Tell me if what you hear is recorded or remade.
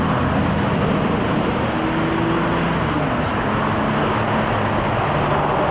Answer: recorded